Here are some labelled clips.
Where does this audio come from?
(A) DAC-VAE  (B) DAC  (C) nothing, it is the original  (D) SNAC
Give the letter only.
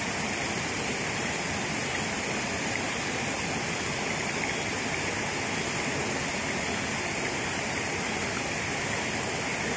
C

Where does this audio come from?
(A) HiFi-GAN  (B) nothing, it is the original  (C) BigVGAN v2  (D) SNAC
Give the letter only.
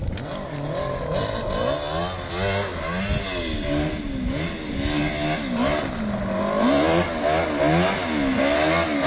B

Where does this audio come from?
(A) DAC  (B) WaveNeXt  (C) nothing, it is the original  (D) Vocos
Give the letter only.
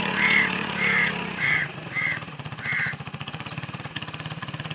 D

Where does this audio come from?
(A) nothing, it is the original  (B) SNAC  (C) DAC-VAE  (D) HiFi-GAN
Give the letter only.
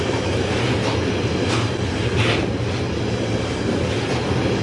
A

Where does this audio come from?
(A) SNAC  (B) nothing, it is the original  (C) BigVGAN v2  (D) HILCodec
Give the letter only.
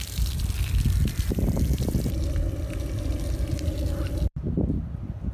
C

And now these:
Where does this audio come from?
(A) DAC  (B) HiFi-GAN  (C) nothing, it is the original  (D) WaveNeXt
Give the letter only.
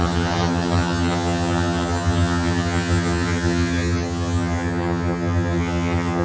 B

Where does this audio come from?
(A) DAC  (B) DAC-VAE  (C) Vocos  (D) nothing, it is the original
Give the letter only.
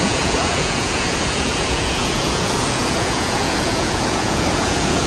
C